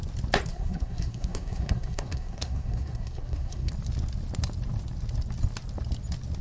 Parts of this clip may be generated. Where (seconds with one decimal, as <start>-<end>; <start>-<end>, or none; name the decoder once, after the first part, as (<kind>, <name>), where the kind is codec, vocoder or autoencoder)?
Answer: 0.5-3.7 (codec, SNAC)